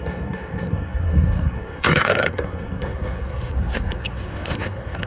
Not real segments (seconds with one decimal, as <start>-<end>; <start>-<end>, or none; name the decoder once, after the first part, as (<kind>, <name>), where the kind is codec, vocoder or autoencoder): 0.0-5.1 (codec, SNAC)